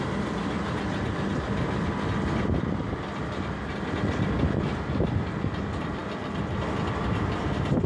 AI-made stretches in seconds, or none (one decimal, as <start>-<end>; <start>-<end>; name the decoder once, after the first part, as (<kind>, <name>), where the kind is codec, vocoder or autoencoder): none